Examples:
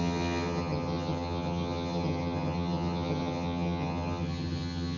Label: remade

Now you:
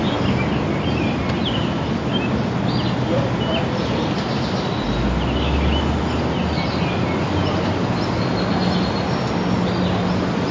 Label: recorded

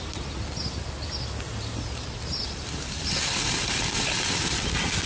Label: recorded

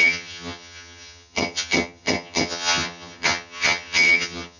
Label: remade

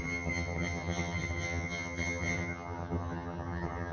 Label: remade